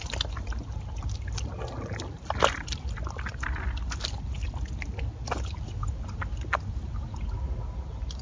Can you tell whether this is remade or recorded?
recorded